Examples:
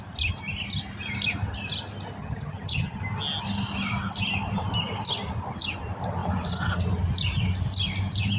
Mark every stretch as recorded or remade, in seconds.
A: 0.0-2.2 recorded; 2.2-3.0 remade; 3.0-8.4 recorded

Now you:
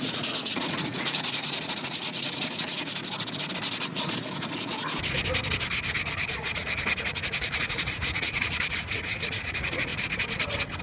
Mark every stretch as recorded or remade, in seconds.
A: 0.0-2.9 remade; 2.9-6.3 recorded; 6.3-9.9 remade; 9.9-10.8 recorded

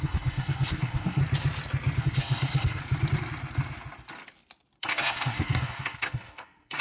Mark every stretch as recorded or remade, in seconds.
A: 0.0-1.2 remade; 1.2-2.0 recorded; 2.0-2.8 remade; 2.8-4.8 recorded; 4.8-6.8 remade

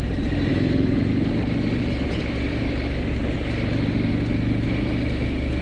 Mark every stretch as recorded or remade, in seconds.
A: 0.0-0.5 recorded; 0.5-1.1 remade; 1.1-5.6 recorded

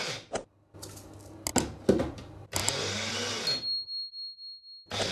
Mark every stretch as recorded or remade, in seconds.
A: 0.0-5.1 recorded